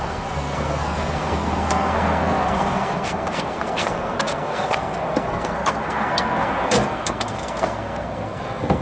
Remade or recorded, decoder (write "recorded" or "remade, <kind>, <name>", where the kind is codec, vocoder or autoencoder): remade, codec, SNAC